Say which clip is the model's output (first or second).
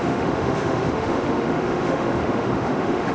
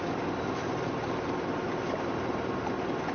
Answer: first